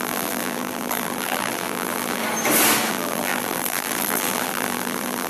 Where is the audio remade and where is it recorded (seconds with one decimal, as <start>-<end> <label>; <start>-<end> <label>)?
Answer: 0.0-2.2 remade; 2.2-2.9 recorded; 2.9-5.3 remade